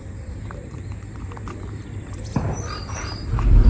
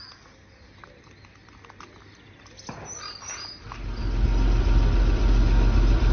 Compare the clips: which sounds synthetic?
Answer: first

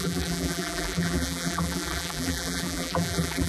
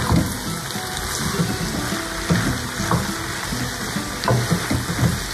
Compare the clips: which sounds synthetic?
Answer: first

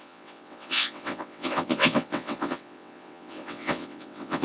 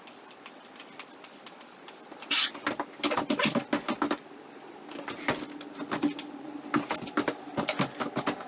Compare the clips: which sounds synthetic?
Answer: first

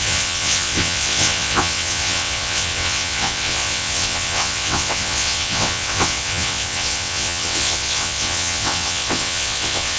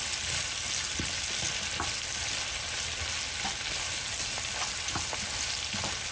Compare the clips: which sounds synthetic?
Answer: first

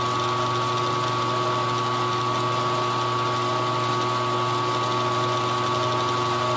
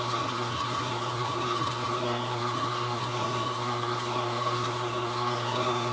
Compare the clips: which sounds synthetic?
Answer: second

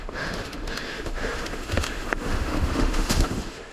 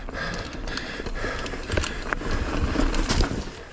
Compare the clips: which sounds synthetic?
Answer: first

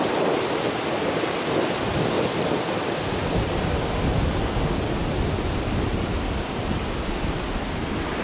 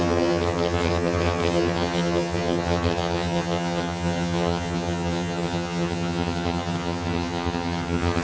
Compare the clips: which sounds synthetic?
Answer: second